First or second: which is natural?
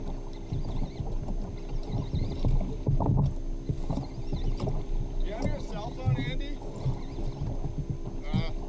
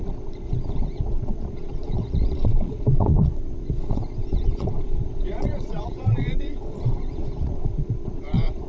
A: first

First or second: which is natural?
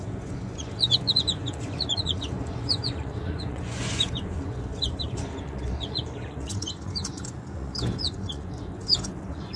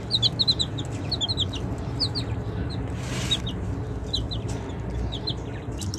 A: second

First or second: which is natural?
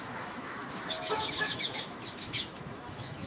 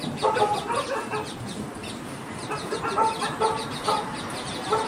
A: second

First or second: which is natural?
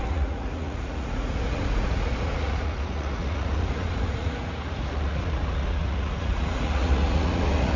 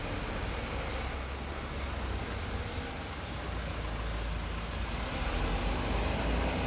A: second